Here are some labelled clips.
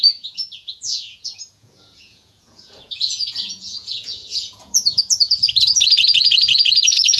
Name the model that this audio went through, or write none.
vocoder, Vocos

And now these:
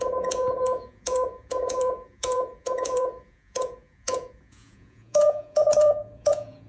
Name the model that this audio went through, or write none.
vocoder, Vocos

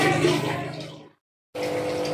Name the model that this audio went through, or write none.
none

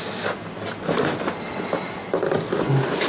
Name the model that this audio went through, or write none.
none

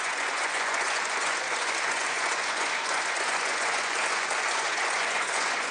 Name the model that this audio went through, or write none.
vocoder, Vocos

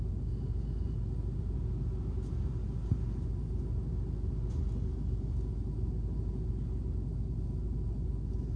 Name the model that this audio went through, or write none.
none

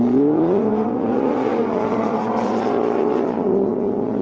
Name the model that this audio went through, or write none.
vocoder, Vocos